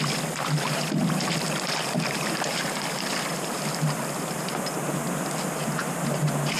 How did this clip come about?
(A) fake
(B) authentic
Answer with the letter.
B